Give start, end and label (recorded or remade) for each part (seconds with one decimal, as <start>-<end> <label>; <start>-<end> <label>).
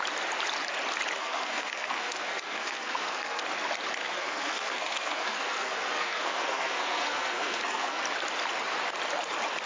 0.0-1.2 recorded; 1.2-3.4 remade; 3.4-4.0 recorded; 4.0-8.0 remade; 8.0-9.7 recorded